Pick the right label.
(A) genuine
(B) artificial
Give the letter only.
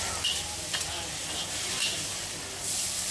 A